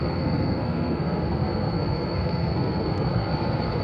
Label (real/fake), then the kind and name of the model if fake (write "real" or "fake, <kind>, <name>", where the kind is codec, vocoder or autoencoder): fake, codec, SNAC